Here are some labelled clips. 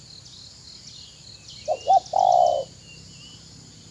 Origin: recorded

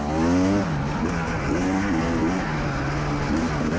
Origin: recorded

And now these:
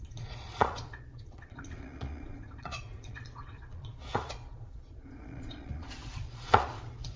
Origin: remade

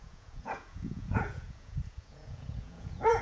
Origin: remade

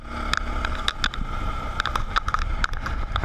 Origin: recorded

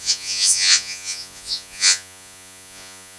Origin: remade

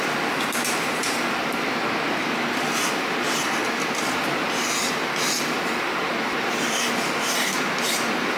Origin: recorded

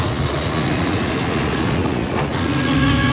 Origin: remade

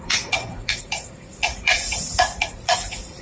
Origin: remade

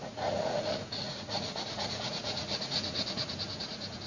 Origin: remade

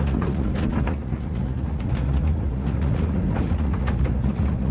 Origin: remade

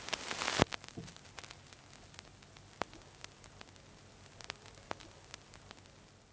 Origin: recorded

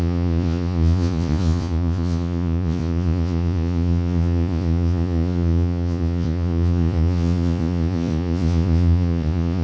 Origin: remade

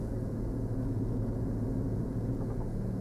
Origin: remade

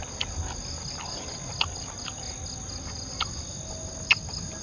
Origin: recorded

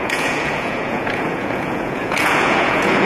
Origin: remade